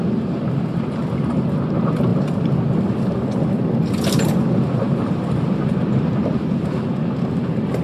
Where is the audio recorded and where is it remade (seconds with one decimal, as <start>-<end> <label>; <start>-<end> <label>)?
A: 0.0-2.1 recorded; 2.1-6.8 remade; 6.8-7.8 recorded